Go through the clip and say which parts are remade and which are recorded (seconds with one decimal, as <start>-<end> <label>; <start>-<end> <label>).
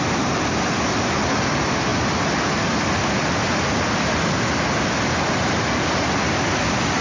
0.0-7.0 recorded